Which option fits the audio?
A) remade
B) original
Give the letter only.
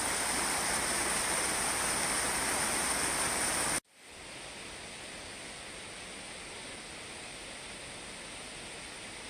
B